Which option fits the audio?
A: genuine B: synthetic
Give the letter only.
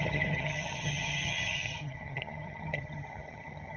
B